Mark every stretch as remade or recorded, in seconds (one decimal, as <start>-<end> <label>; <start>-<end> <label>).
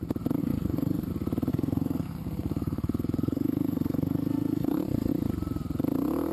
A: 0.0-0.4 recorded; 0.4-1.1 remade; 1.1-1.5 recorded; 1.5-5.1 remade; 5.1-6.3 recorded